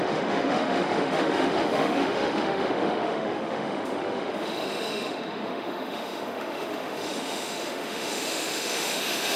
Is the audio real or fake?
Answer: fake